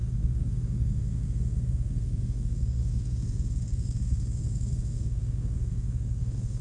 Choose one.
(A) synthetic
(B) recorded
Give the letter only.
A